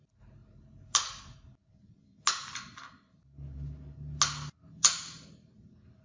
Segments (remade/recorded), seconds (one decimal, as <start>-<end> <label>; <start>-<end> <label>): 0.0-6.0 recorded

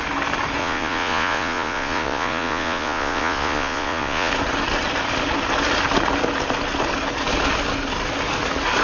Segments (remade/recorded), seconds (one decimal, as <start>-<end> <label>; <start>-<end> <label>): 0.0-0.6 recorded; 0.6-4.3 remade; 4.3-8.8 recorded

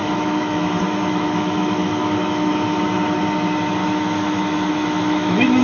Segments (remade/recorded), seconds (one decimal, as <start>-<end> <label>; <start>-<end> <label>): 0.0-2.5 remade; 2.5-3.8 recorded; 3.8-5.6 remade

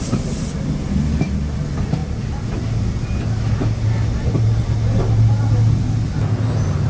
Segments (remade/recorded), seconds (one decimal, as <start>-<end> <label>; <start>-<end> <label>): 0.0-6.9 recorded

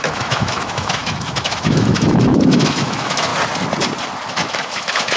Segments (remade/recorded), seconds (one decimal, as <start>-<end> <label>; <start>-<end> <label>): 0.0-3.3 remade; 3.3-4.3 recorded; 4.3-5.2 remade

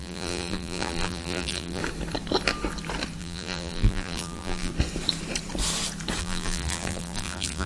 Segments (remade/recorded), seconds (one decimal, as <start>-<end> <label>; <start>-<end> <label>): 0.0-1.8 remade; 1.8-3.2 recorded; 3.2-4.7 remade; 4.7-6.2 recorded; 6.2-7.7 remade

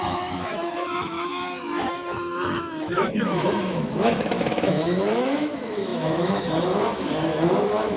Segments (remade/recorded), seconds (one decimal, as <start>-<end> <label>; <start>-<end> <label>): 0.0-8.0 remade